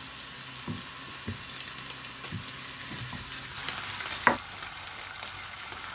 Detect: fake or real real